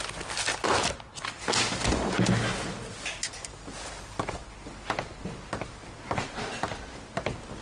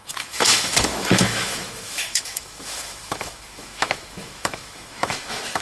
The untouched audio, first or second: first